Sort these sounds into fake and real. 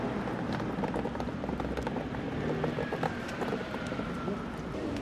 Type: real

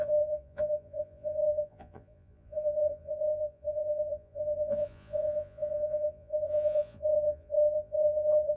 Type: fake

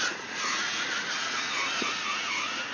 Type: fake